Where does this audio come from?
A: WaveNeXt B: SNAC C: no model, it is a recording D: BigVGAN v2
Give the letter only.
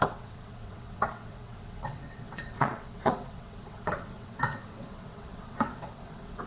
A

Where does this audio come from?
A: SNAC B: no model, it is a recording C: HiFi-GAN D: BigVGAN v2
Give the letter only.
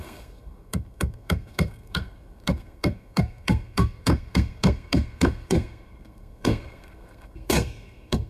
A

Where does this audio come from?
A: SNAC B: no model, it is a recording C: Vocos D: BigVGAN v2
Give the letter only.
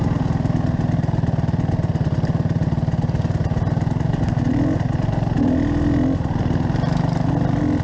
B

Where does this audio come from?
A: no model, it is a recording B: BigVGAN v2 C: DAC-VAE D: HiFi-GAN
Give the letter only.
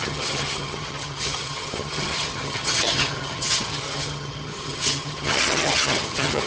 D